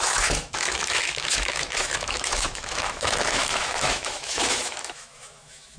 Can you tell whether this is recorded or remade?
remade